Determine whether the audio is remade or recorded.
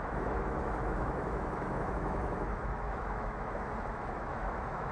remade